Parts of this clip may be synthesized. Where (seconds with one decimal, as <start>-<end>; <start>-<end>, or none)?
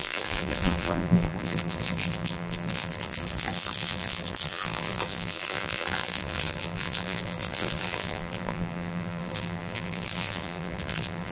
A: 0.0-11.3